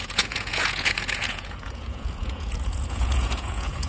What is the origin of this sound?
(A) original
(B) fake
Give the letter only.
B